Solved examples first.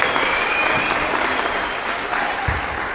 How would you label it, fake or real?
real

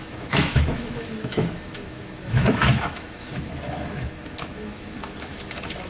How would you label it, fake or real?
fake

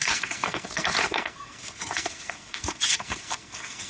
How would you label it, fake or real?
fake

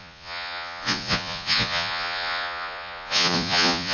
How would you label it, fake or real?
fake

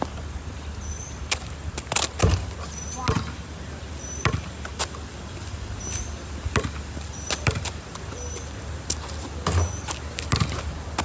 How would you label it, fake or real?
real